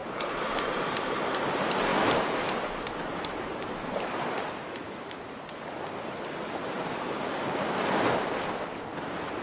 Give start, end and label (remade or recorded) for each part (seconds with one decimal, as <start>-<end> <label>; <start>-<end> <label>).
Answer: 0.0-1.4 remade; 1.4-1.9 recorded; 1.9-4.8 remade; 4.8-9.4 recorded